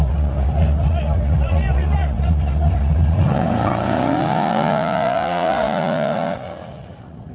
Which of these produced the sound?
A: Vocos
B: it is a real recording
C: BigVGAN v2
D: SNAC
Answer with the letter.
A